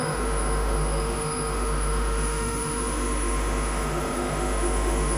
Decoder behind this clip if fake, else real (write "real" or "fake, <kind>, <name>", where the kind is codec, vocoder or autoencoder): fake, autoencoder, DAC-VAE